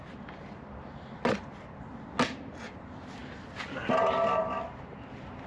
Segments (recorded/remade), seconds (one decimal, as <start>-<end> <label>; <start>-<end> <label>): 0.0-5.5 recorded